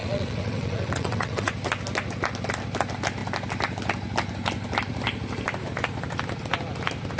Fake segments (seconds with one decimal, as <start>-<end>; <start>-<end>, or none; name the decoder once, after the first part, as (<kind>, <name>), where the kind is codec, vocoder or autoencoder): 0.0-1.5 (vocoder, WaveNeXt)

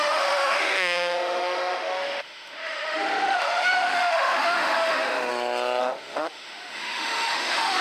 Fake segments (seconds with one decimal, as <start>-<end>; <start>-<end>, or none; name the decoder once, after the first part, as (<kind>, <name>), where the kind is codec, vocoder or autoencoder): 0.0-5.3 (autoencoder, DAC-VAE); 5.8-7.8

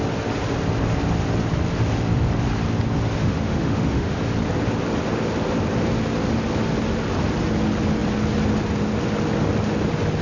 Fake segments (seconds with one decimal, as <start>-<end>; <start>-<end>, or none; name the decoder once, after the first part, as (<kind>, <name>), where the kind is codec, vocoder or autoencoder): 3.2-4.2 (autoencoder, DAC-VAE)

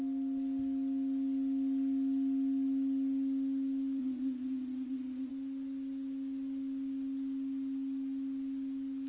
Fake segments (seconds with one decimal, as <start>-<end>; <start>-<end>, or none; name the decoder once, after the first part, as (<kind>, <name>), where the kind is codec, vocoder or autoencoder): 4.0-5.3 (vocoder, Vocos)

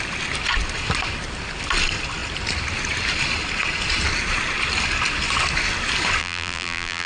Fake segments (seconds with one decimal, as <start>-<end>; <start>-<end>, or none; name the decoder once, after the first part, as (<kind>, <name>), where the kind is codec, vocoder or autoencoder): 6.2-7.1 (vocoder, BigVGAN v2)

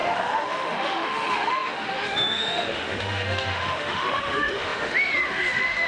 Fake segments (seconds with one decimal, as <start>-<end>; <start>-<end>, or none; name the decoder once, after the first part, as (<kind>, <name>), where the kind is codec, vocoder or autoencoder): 0.0-5.9 (autoencoder, DAC-VAE)

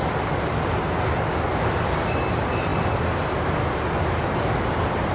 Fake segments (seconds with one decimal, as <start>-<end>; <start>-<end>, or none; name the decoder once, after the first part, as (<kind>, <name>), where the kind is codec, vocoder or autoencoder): 2.7-3.2 (vocoder, BigVGAN v2)